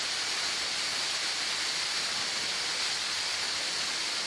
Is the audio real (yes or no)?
yes